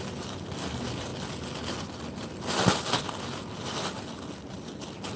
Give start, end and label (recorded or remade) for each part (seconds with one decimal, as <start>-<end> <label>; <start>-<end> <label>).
0.0-5.2 recorded